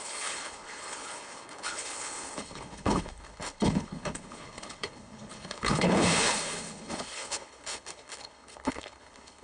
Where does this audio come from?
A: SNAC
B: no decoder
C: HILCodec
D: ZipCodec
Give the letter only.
C